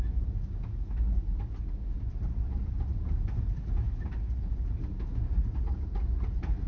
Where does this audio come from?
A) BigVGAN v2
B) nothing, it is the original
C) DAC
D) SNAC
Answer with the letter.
B